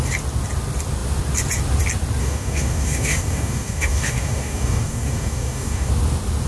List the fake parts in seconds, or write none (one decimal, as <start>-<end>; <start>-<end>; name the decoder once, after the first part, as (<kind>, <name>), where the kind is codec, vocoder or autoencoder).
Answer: 2.2-5.9 (codec, DAC)